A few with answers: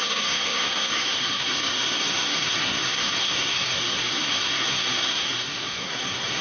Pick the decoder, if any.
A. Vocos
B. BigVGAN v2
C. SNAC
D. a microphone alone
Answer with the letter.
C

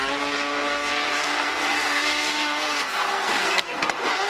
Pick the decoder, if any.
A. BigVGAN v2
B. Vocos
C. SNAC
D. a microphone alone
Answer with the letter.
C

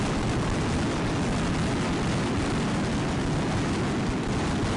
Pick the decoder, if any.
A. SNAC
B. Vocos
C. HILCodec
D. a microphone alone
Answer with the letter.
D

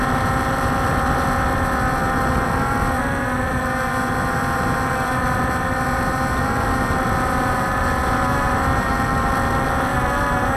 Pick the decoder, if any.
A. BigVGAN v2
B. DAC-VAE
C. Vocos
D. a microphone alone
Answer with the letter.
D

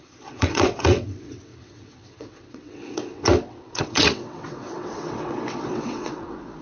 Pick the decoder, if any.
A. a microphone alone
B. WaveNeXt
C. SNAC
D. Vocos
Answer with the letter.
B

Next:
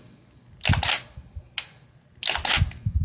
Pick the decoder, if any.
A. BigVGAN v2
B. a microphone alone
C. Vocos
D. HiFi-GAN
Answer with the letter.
B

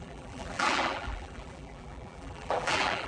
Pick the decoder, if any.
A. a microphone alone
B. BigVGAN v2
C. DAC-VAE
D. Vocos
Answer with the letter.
B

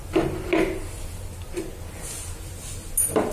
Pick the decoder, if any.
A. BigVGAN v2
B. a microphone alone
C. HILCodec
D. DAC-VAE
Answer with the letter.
B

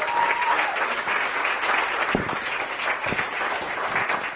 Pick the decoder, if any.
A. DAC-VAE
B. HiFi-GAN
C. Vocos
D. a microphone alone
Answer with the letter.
D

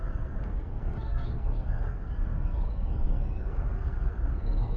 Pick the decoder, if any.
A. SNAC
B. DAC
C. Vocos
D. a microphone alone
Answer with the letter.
A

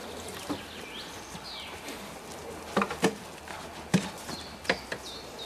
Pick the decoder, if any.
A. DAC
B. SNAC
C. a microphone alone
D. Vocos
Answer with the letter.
C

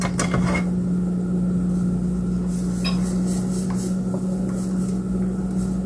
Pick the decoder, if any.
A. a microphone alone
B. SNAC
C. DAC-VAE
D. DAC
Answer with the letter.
A